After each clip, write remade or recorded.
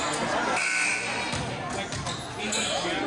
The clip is recorded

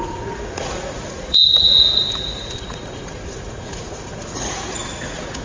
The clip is remade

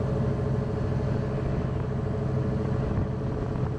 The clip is recorded